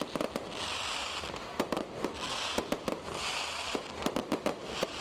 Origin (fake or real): real